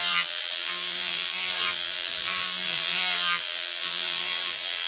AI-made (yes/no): yes